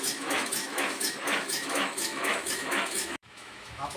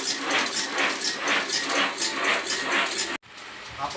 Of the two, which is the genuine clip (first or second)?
second